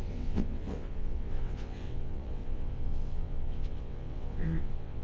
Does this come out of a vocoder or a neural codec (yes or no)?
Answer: yes